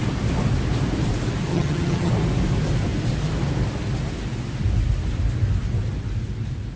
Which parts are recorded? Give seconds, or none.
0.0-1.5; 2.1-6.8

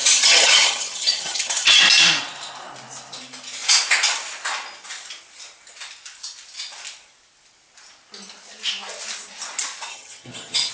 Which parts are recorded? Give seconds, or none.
1.8-9.9

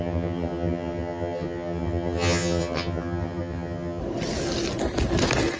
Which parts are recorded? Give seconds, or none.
4.0-5.6

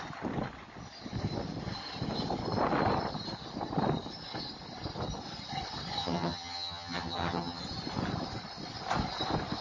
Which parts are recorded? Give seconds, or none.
0.0-6.0; 7.6-9.6

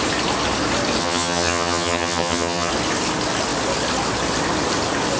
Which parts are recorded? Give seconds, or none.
0.0-1.0; 2.7-5.2

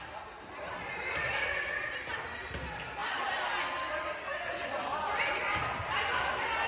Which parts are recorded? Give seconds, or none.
0.0-6.7

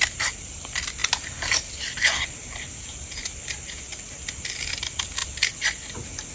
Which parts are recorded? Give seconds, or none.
0.0-6.3

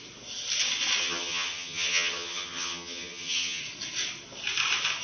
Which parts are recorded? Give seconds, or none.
0.0-1.0; 3.6-5.0